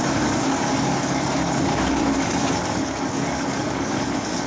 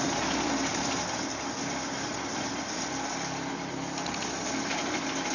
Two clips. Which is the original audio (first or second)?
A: second